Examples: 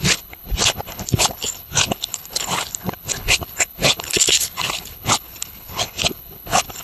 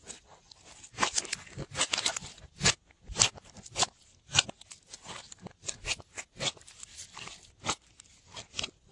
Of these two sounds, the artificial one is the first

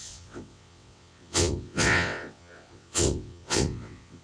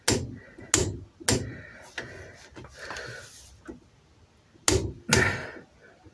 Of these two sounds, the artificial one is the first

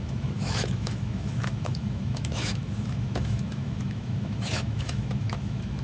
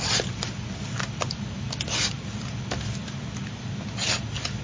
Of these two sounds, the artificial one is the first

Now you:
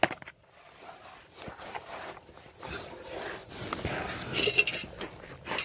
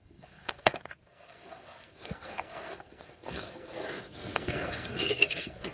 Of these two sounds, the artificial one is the second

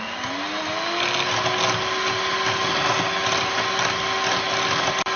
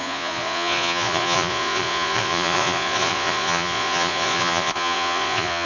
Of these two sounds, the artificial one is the second